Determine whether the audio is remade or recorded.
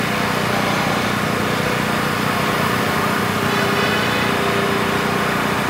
recorded